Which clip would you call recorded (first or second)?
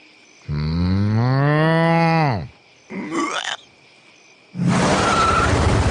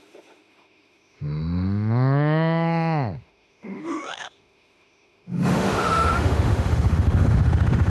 first